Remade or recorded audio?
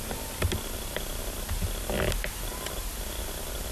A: recorded